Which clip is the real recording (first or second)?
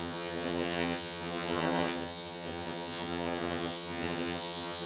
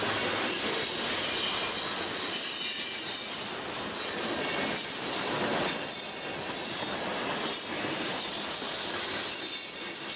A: second